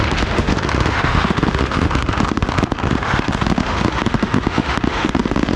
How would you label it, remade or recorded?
remade